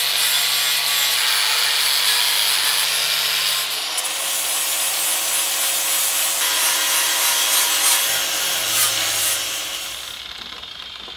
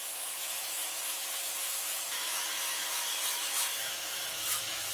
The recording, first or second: first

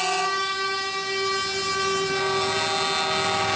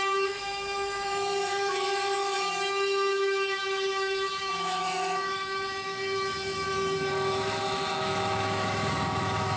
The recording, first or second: first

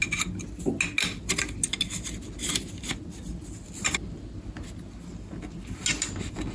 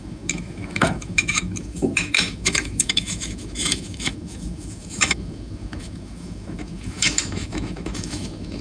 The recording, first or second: first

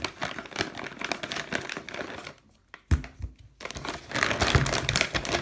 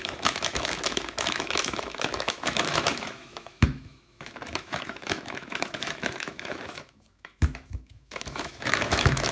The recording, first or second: first